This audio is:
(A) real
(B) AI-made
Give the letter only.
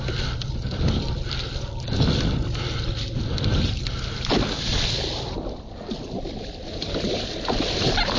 A